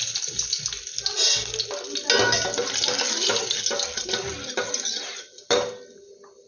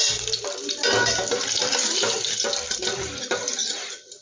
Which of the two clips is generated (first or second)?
second